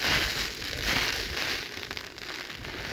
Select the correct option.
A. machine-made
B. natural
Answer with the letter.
B